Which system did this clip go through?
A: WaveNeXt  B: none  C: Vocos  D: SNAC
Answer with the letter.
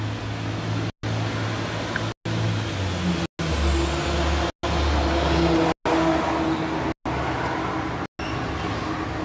B